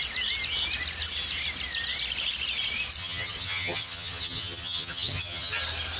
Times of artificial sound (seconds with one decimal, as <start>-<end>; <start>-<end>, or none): 3.0-5.6